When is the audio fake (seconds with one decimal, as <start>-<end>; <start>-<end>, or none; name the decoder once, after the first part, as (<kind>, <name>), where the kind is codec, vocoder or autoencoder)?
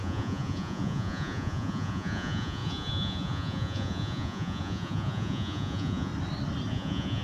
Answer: 0.0-6.1 (vocoder, Vocos); 6.7-7.2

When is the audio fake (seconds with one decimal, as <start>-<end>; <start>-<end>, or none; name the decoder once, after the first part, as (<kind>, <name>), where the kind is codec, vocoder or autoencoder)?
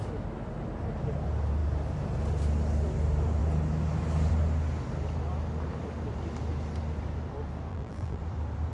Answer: 7.7-8.2 (vocoder, BigVGAN v2)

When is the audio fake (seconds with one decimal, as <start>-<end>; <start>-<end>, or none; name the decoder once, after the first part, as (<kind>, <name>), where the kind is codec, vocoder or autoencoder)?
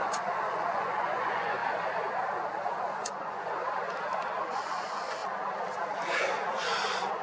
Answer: 0.0-1.6 (vocoder, Vocos); 2.8-3.6; 4.4-5.2; 6.2-7.2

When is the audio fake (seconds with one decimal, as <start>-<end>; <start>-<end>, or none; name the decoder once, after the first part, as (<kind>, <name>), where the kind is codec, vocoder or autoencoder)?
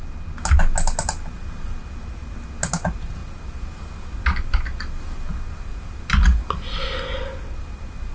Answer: none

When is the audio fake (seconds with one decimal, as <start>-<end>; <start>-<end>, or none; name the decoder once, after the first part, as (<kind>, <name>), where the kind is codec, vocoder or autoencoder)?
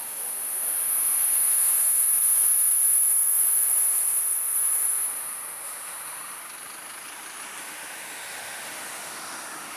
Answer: 0.0-6.4 (autoencoder, DAC-VAE); 7.6-9.8